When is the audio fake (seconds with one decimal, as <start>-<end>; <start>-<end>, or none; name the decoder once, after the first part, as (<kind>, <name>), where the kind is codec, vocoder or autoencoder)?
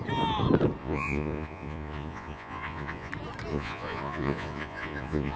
0.8-3.1 (vocoder, Vocos); 3.5-5.4